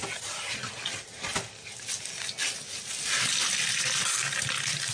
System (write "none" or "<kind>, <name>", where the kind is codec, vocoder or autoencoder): none